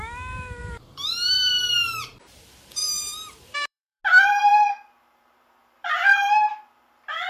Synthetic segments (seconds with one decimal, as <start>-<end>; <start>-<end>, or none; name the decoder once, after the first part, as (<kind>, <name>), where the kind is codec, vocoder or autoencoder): 0.6-2.4 (vocoder, BigVGAN v2); 2.8-4.0